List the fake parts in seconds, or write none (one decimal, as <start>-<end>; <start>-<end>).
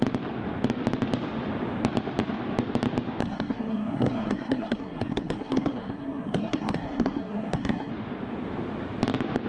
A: 3.2-7.9